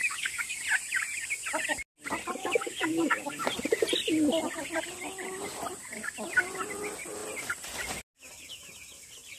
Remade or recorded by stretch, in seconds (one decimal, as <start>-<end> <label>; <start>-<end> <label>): 0.0-0.6 remade; 0.6-2.4 recorded; 2.4-3.5 remade; 3.5-9.4 recorded